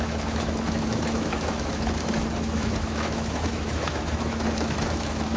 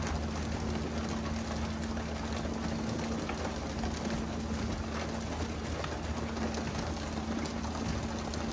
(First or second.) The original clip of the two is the second